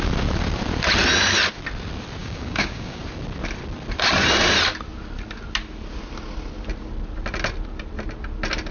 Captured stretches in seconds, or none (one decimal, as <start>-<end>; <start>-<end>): 0.0-2.2; 3.0-8.7